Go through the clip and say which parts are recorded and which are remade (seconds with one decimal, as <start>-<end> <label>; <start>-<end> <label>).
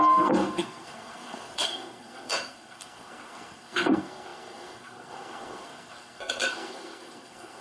0.0-7.6 remade